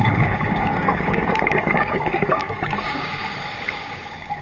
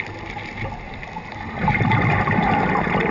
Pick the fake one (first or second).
first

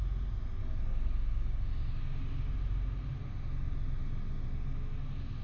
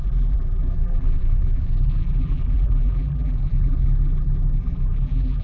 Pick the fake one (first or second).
second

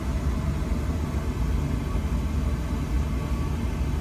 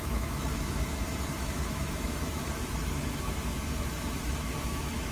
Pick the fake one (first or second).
second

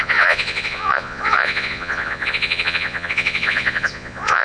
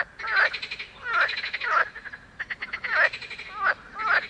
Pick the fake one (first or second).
first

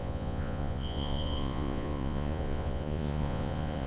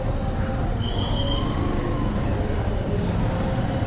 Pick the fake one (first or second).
first